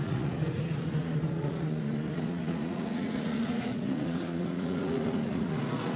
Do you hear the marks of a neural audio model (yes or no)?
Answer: yes